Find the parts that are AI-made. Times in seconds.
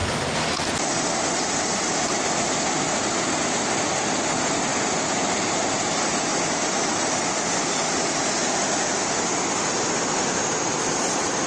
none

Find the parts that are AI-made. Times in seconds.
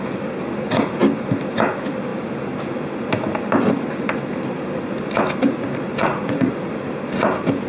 6.0-6.5 (vocoder, Vocos)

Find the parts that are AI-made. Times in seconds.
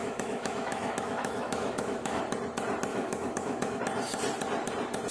0.0-2.2 (autoencoder, DAC-VAE); 2.9-3.8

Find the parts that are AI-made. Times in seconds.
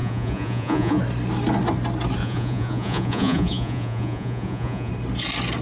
0.0-1.0 (vocoder, Vocos); 2.2-4.9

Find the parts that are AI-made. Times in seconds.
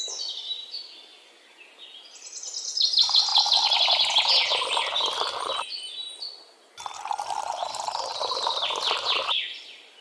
none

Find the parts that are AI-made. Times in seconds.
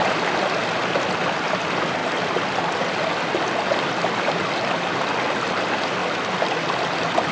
0.0-0.6 (vocoder, BigVGAN v2); 1.3-2.0; 3.8-7.3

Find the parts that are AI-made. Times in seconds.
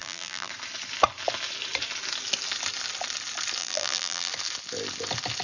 0.0-0.5 (vocoder, BigVGAN v2); 3.6-4.3